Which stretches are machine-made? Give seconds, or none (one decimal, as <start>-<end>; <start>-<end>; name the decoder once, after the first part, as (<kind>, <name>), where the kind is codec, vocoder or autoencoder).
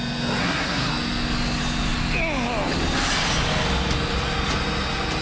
0.4-0.9 (codec, SNAC)